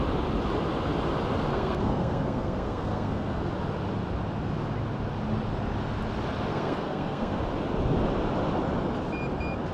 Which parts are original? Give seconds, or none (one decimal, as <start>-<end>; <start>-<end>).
0.0-1.5; 3.5-6.5; 7.4-9.7